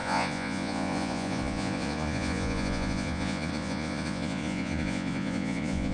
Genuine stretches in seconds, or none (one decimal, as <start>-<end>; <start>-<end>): none